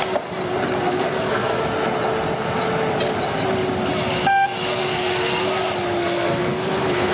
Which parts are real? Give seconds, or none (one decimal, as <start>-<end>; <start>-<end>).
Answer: 0.0-0.8; 1.6-4.7; 5.5-6.0